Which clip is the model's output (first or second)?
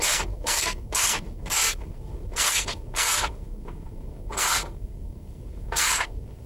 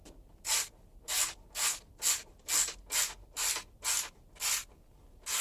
first